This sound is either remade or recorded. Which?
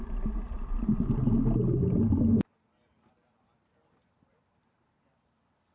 recorded